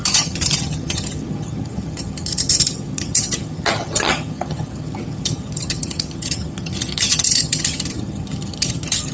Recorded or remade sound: remade